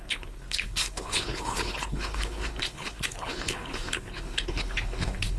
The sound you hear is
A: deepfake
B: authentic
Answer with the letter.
A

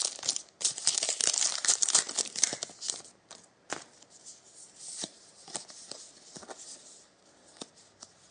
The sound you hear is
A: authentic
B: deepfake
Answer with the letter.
A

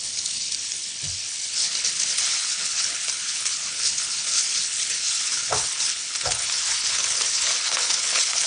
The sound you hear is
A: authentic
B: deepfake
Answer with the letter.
B